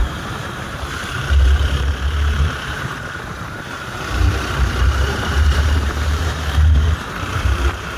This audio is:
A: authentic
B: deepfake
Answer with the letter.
B